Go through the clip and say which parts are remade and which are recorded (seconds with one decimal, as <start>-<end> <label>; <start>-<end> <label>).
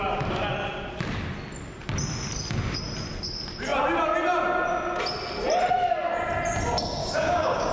0.0-7.0 recorded; 7.0-7.7 remade